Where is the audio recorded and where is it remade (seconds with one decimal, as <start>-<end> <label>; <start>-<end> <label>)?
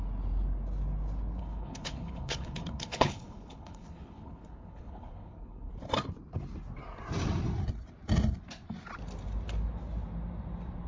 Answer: 0.0-1.4 recorded; 1.4-5.7 remade; 5.7-10.9 recorded